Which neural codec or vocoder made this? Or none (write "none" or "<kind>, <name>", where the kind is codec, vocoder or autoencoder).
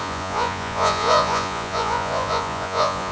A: vocoder, Vocos